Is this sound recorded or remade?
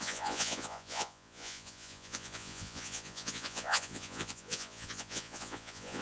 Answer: remade